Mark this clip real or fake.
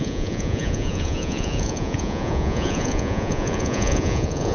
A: fake